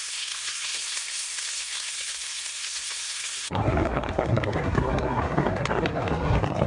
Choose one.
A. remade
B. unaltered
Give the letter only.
A